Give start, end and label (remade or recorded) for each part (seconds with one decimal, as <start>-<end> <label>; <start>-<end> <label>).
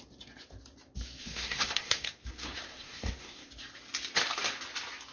0.0-1.2 recorded; 1.2-3.5 remade; 3.5-5.1 recorded